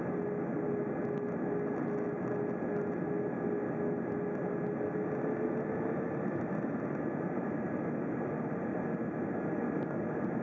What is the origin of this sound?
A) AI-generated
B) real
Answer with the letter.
B